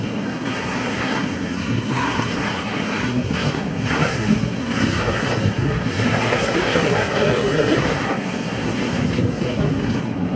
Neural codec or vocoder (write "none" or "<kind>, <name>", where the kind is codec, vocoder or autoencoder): codec, SNAC